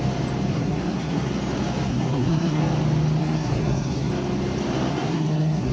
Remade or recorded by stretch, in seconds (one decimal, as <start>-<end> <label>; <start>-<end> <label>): 0.0-0.5 recorded; 0.5-1.3 remade; 1.3-1.9 recorded; 1.9-2.6 remade; 2.6-3.2 recorded; 3.2-4.1 remade; 4.1-4.9 recorded; 4.9-5.7 remade